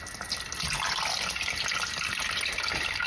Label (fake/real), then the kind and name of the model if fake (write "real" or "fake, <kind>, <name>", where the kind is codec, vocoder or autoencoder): real